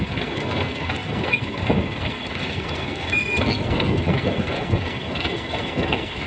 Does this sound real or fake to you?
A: fake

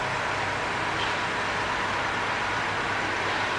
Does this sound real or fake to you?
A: real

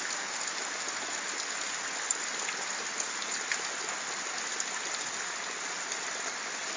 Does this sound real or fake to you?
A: real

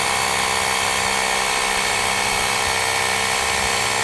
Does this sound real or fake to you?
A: real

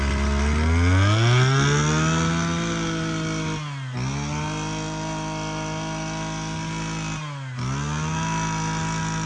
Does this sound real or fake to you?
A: real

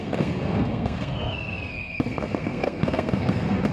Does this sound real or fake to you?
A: fake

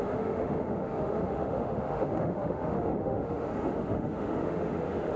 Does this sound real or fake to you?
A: fake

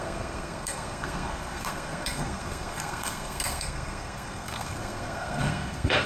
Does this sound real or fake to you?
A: fake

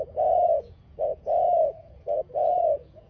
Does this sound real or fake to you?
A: fake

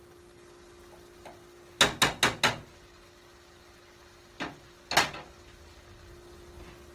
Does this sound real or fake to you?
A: real